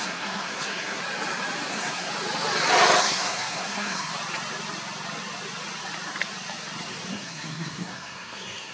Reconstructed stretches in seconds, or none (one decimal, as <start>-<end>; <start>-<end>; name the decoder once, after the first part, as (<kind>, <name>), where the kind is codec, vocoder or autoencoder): 0.0-1.0 (codec, SNAC); 1.7-2.1; 3.0-4.1; 7.1-8.7